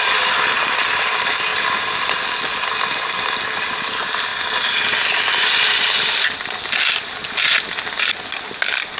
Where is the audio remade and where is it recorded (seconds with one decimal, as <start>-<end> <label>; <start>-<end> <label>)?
0.0-9.0 recorded